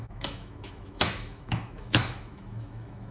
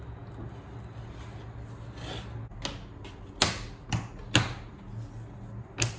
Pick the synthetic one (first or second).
first